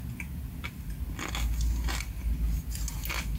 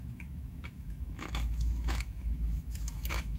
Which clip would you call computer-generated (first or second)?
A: second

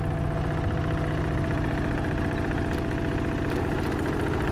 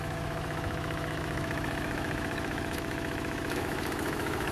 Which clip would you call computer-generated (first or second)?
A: second